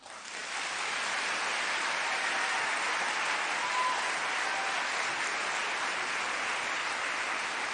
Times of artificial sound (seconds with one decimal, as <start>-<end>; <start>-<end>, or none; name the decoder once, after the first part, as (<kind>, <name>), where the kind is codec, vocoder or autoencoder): none